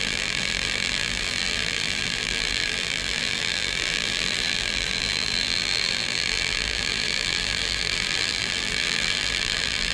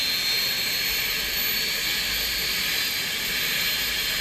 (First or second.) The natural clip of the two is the second